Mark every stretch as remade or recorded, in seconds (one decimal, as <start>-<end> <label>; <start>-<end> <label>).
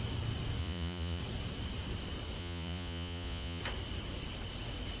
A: 0.0-0.6 recorded; 0.6-1.2 remade; 1.2-2.4 recorded; 2.4-3.6 remade; 3.6-5.0 recorded